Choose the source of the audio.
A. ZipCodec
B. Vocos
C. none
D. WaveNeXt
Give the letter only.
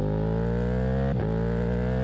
C